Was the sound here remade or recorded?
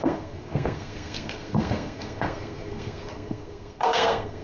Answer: remade